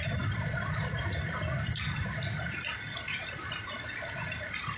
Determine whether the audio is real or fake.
fake